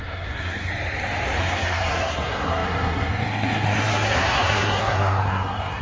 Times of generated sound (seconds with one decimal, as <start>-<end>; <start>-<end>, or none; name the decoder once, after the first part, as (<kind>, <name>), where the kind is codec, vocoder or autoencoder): 0.0-0.7 (codec, SNAC); 1.4-5.8